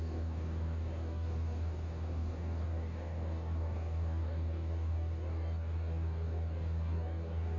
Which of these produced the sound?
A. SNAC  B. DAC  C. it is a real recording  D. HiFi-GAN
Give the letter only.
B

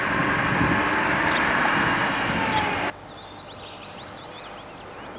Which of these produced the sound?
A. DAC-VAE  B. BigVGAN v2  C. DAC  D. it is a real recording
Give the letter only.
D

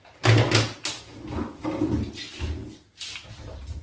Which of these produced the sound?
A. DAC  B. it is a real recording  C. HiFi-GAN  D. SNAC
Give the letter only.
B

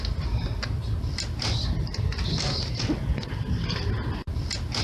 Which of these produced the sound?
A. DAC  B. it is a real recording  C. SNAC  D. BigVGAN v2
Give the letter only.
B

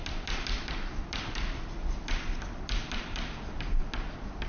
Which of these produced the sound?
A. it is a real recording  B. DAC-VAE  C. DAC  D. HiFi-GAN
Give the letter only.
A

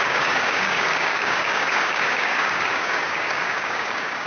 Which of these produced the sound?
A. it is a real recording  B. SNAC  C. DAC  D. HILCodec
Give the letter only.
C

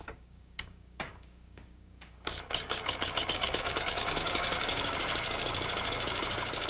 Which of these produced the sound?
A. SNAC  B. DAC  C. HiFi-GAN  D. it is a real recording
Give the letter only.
B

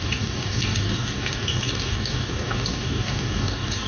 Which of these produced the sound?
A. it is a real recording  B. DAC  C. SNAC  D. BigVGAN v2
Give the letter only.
B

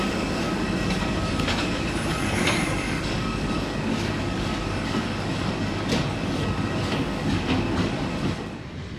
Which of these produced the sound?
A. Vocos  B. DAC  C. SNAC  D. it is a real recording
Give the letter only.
B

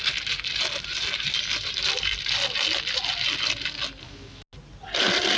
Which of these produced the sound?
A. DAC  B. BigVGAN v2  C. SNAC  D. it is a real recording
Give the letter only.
D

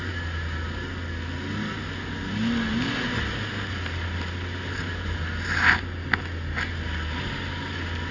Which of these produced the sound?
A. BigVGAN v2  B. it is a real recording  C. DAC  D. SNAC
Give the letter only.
B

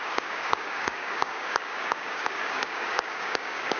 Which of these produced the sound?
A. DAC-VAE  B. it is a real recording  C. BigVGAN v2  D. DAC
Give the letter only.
D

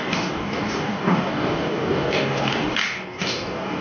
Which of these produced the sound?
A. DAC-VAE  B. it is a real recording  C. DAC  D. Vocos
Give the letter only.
C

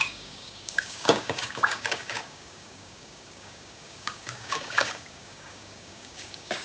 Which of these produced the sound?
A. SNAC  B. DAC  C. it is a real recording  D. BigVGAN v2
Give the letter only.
B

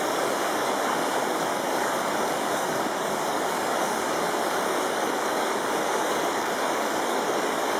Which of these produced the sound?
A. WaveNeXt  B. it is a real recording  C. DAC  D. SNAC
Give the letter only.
C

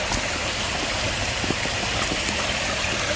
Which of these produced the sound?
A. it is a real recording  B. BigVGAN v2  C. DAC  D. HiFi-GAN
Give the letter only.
A